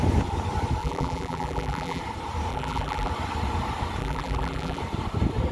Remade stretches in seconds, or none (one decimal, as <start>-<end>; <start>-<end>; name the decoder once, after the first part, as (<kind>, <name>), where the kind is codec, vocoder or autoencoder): 0.8-2.0 (vocoder, BigVGAN v2); 2.5-3.1; 4.0-4.8